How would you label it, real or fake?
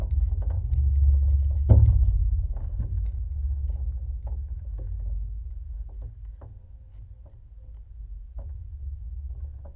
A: real